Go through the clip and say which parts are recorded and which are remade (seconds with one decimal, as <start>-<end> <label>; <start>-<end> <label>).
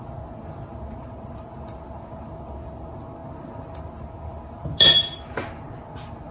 0.0-6.3 recorded